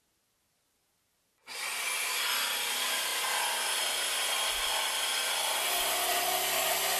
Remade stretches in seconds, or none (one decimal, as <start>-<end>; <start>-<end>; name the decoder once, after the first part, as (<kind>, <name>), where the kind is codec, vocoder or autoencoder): none